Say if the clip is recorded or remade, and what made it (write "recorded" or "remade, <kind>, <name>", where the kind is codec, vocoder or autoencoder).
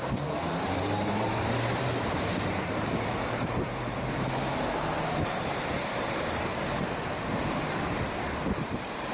remade, vocoder, BigVGAN v2